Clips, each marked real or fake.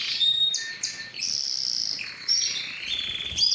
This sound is fake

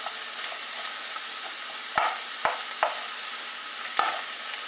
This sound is real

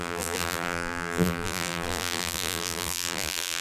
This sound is fake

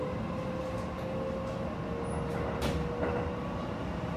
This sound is real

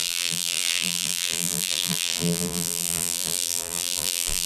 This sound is fake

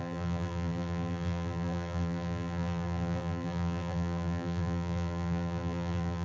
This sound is fake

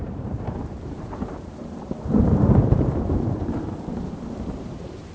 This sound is fake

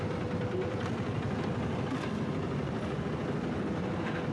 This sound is real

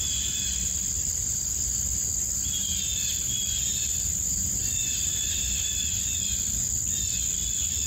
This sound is real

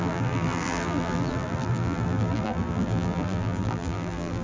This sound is fake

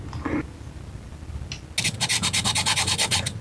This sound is real